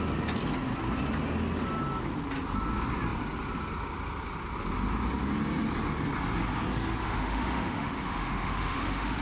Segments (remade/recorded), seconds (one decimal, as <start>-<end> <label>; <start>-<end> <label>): 0.0-7.0 recorded; 7.0-9.2 remade